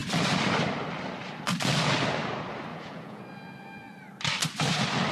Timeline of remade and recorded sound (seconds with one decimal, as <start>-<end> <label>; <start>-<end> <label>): 0.0-2.7 recorded; 2.7-3.2 remade; 3.2-5.1 recorded